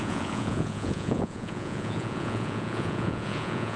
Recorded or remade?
remade